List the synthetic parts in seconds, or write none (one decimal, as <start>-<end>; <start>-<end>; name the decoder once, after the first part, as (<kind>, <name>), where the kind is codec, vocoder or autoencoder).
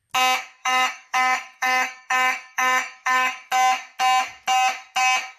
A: 0.6-3.5 (codec, DAC)